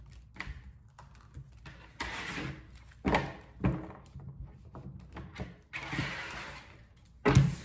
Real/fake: real